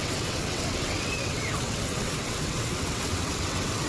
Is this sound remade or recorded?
remade